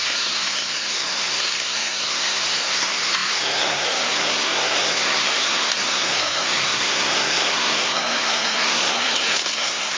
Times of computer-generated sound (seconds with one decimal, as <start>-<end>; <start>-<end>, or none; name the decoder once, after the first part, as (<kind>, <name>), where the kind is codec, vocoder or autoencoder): 0.0-10.0 (codec, SNAC)